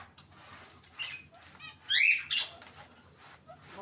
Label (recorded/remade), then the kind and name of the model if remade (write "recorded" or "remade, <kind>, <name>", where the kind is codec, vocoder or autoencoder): recorded